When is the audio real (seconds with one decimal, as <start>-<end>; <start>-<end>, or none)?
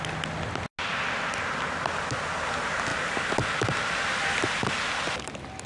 0.0-5.7